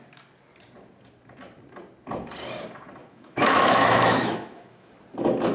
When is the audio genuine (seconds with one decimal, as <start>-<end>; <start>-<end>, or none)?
0.0-3.0; 4.9-5.5